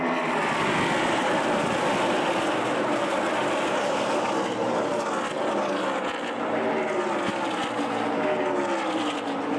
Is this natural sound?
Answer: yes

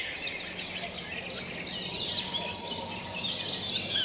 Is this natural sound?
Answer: yes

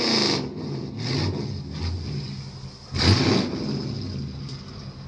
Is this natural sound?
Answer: yes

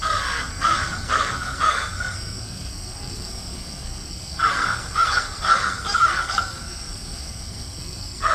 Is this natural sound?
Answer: no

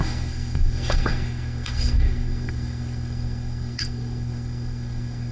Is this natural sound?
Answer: no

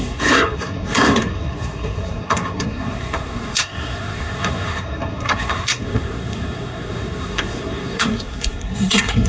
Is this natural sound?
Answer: no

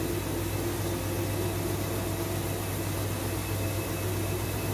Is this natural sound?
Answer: yes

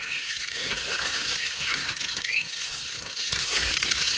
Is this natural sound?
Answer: no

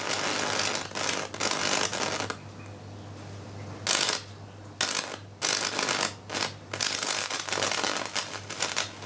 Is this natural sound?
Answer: yes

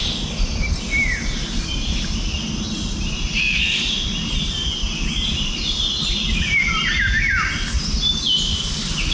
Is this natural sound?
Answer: yes